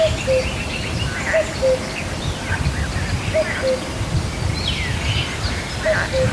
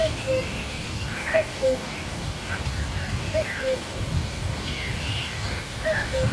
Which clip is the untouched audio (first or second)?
first